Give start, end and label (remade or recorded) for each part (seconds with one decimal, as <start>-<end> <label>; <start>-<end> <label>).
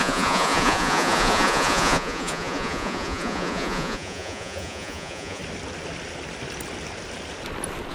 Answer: 0.0-5.4 remade; 5.4-7.9 recorded